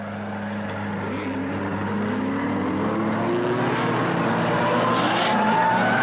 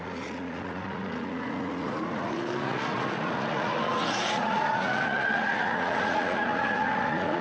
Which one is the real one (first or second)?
first